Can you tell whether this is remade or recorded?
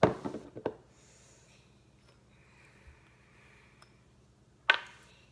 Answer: recorded